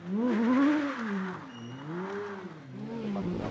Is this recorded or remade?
recorded